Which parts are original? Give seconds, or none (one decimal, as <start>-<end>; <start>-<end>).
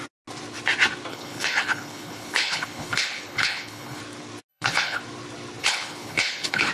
0.0-1.1; 4.0-4.5; 5.0-5.6